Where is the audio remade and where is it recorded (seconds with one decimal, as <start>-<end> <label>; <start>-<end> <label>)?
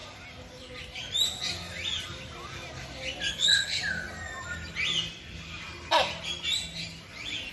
0.0-3.3 recorded; 3.3-3.8 remade; 3.8-7.5 recorded